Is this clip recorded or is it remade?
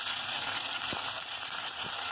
remade